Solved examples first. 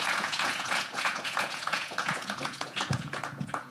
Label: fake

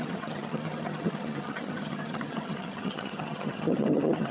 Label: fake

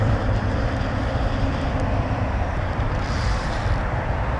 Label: fake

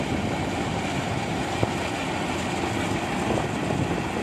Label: real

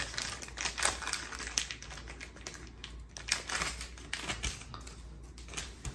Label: real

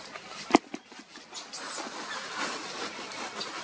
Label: real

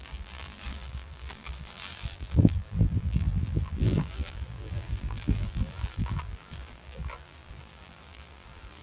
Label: fake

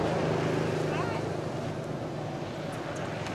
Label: real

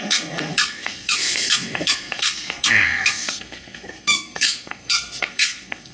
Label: fake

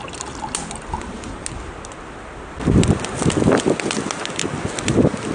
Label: real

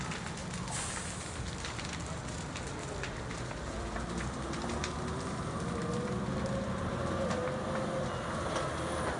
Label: real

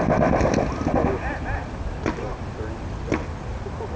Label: real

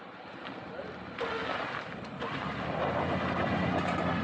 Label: real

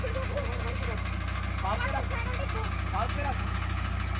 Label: real